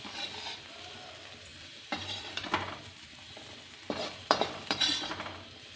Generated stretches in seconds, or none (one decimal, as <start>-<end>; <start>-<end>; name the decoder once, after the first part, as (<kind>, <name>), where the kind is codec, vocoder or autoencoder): 1.5-4.9 (vocoder, BigVGAN v2)